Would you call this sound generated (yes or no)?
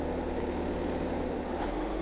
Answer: no